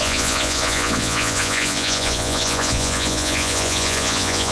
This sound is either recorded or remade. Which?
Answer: remade